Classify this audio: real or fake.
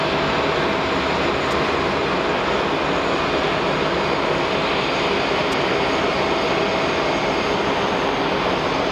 real